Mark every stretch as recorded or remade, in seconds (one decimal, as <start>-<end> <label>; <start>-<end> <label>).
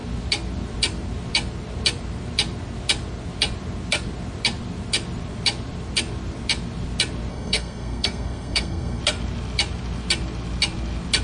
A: 0.0-7.3 recorded; 7.3-9.0 remade; 9.0-11.2 recorded